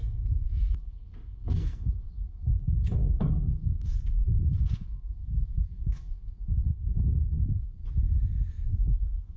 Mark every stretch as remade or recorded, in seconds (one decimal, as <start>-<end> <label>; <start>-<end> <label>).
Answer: 0.0-7.8 remade; 7.8-8.5 recorded; 8.5-9.4 remade

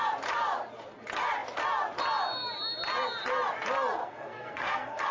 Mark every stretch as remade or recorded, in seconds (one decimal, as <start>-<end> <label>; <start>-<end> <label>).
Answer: 0.0-4.0 recorded; 4.0-5.1 remade

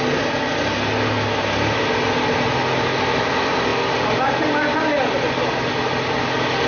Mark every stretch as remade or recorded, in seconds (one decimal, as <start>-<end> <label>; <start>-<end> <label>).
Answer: 0.0-6.7 recorded

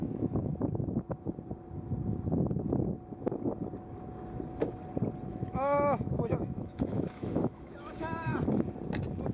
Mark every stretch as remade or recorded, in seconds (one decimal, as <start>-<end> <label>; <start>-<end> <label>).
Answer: 0.0-0.5 remade; 0.5-5.3 recorded; 5.3-8.3 remade; 8.3-9.3 recorded

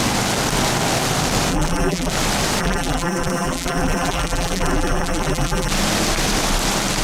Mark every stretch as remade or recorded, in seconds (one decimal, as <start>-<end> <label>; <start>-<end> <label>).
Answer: 0.0-1.5 recorded; 1.5-2.1 remade; 2.1-2.6 recorded; 2.6-5.7 remade; 5.7-7.0 recorded